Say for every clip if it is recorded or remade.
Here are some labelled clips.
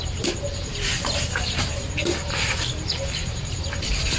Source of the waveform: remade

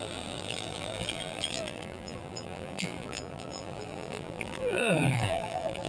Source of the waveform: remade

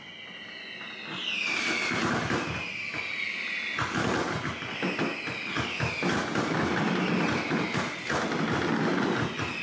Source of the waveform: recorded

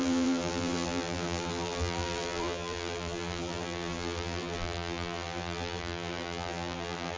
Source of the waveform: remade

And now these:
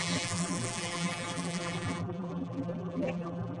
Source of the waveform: remade